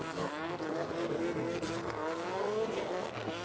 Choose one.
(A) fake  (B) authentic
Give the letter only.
A